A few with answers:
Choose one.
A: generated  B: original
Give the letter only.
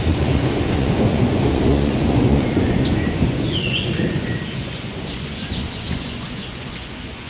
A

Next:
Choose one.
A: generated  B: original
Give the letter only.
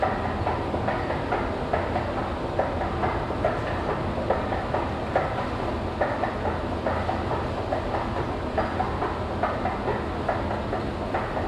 B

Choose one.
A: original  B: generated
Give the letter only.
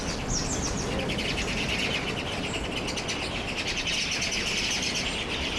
A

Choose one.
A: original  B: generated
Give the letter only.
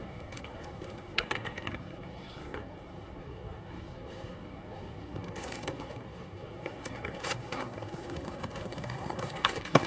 B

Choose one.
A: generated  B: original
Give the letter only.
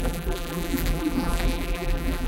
A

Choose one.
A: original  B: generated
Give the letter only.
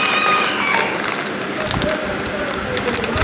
A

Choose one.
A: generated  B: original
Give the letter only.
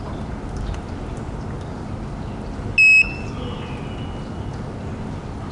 B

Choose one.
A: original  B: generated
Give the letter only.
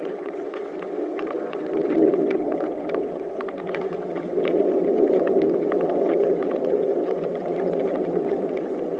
B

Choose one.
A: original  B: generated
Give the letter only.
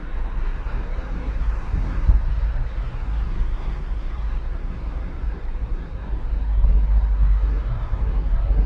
B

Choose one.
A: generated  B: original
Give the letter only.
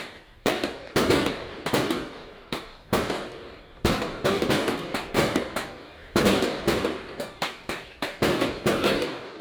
A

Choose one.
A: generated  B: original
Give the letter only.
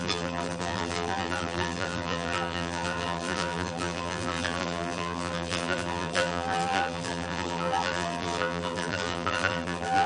A